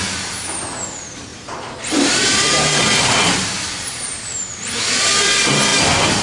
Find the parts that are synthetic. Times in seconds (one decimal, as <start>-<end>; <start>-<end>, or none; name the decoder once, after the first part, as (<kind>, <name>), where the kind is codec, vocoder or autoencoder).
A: 1.3-4.8 (vocoder, BigVGAN v2)